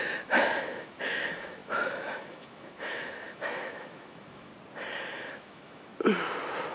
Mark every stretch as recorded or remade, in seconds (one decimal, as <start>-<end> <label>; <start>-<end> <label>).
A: 0.0-4.5 remade; 4.5-5.3 recorded; 5.3-5.9 remade; 5.9-6.7 recorded